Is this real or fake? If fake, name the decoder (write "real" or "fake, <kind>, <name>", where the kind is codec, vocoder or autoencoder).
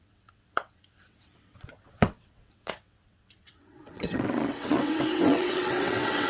fake, vocoder, WaveNeXt